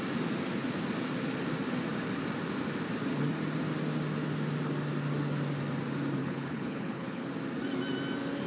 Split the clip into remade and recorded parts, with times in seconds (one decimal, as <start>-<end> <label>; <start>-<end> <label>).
0.0-6.2 recorded; 6.2-7.3 remade; 7.3-8.5 recorded